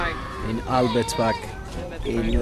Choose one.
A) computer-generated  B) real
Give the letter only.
A